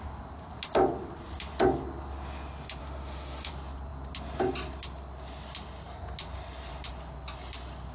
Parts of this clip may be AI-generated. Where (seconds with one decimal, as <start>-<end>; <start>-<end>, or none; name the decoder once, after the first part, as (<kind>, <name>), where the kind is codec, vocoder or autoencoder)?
2.8-3.5 (autoencoder, DAC-VAE)